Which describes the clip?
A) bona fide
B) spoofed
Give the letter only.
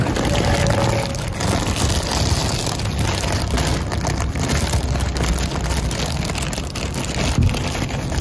A